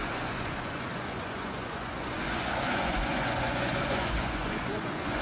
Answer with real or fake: fake